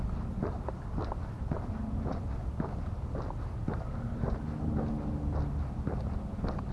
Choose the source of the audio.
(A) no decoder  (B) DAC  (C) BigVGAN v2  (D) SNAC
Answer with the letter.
A